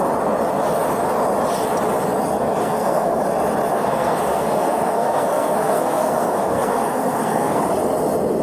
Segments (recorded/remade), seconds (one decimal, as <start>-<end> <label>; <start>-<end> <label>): 0.0-2.6 recorded; 2.6-3.2 remade; 3.2-3.7 recorded; 3.7-7.6 remade; 7.6-8.4 recorded